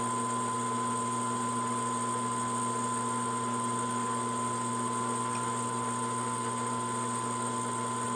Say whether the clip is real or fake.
real